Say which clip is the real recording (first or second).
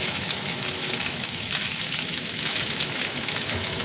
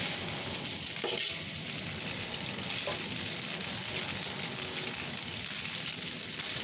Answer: second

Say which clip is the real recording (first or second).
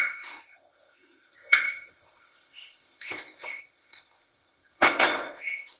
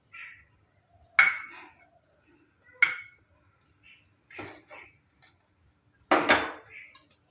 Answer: second